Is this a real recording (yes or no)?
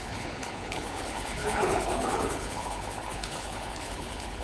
no